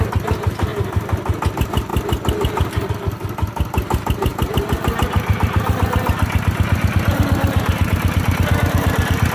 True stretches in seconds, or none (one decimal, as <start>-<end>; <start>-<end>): 0.0-9.3